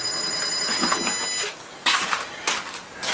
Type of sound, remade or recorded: recorded